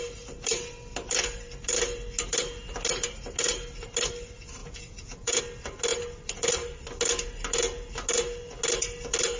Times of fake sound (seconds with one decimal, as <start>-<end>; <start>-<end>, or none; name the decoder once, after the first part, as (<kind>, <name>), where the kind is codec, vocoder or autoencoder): 4.6-5.4 (vocoder, Vocos)